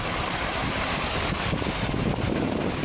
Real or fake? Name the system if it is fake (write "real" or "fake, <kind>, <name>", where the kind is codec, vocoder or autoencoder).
real